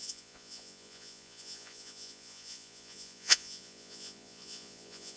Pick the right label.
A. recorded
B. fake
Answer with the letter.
B